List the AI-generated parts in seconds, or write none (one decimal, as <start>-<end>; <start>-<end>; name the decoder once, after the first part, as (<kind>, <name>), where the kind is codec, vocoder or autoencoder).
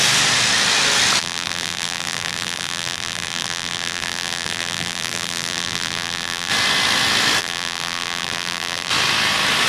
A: 1.2-6.5 (vocoder, BigVGAN v2); 7.4-8.9